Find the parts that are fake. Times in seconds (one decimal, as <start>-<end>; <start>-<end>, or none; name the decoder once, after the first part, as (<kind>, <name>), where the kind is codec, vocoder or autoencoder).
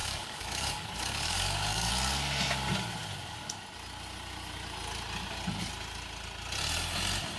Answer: 0.0-1.9 (codec, DAC)